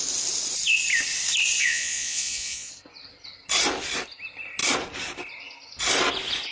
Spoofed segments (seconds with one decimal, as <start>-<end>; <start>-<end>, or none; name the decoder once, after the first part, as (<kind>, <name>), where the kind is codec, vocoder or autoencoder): 1.6-2.7 (vocoder, Vocos)